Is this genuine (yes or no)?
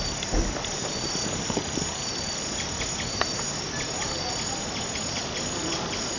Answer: yes